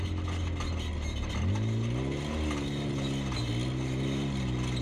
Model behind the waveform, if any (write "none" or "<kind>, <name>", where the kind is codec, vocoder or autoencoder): none